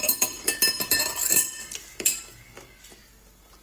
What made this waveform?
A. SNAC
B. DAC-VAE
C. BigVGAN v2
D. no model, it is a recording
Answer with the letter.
C